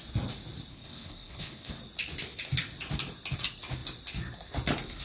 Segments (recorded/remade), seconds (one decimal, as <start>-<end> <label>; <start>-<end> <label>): 0.0-0.7 recorded; 0.7-1.7 remade; 1.7-5.0 recorded